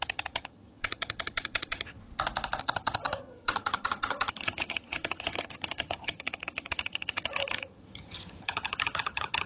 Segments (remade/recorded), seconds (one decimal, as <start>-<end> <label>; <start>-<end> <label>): 0.0-2.0 remade; 2.0-2.6 recorded; 2.6-9.5 remade